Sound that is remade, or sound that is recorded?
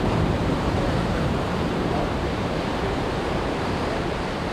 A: remade